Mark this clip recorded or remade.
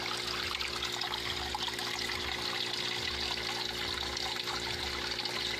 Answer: recorded